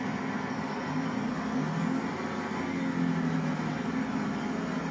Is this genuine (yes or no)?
yes